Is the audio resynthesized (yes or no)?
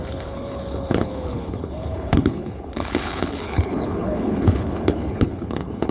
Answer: yes